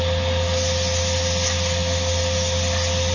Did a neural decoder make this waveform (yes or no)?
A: no